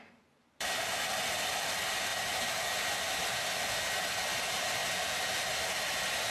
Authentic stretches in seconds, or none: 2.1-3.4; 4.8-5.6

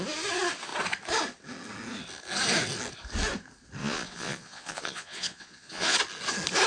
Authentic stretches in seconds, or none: 0.0-3.8; 6.0-6.7

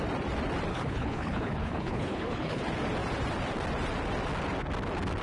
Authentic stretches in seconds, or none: 0.0-0.7; 2.6-5.2

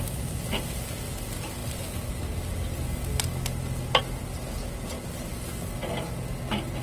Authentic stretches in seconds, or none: 0.0-6.8